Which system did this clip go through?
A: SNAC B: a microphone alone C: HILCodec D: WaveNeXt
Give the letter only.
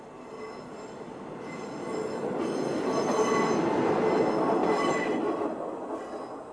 B